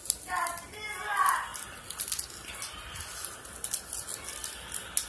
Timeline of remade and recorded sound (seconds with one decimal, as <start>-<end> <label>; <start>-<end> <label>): 0.0-5.1 recorded